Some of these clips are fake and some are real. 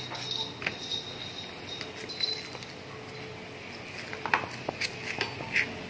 real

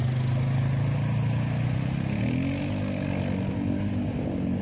real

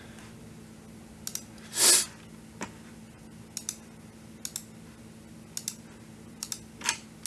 real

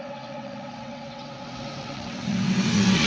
fake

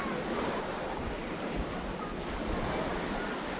real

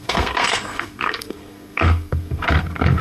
fake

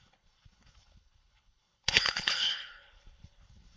fake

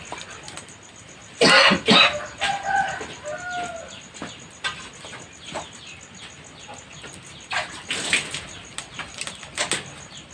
real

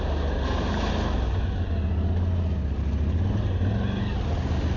real